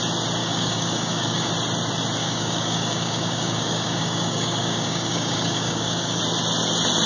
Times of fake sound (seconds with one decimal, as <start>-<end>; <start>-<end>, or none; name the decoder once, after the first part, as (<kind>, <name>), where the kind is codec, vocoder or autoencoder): 0.4-1.5 (codec, DAC); 2.2-6.2

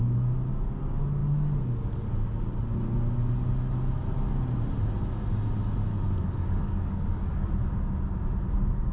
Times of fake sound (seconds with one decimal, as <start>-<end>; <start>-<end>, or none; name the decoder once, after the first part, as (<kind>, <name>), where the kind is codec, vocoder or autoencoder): 5.9-7.5 (codec, DAC)